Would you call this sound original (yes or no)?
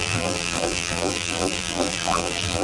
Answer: no